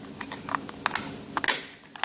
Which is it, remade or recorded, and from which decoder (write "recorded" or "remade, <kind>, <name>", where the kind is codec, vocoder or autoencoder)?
recorded